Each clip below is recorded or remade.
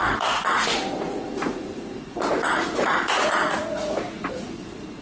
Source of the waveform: remade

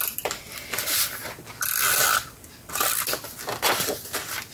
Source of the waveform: recorded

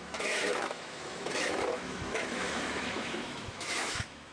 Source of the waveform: remade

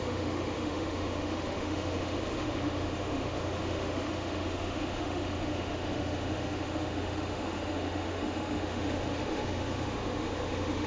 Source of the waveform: remade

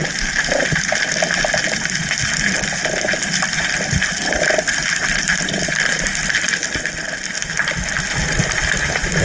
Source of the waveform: recorded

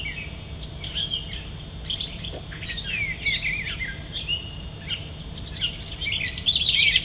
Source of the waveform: recorded